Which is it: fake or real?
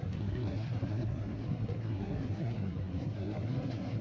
fake